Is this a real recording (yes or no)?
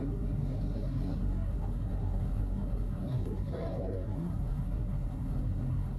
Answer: no